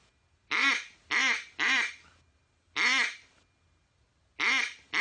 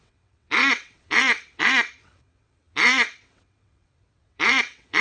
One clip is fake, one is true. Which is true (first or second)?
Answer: first